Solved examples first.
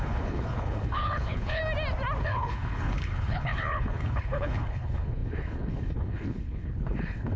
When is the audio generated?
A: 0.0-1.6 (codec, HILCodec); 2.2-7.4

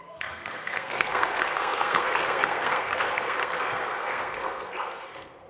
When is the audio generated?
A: 0.0-5.5 (codec, SNAC)

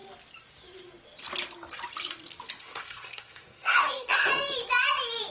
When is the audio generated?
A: 2.6-4.3 (codec, SNAC)

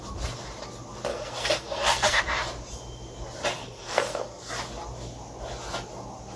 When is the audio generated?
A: 1.1-2.2 (codec, SNAC); 3.6-4.5

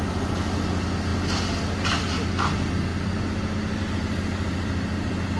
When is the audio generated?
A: none